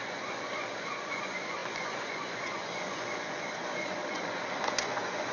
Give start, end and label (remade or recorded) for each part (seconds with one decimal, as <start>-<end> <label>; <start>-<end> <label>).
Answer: 0.0-5.3 remade